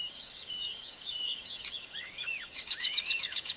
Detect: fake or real fake